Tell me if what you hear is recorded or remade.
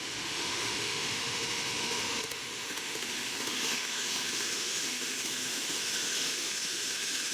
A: remade